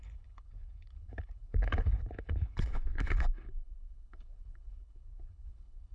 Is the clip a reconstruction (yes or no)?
yes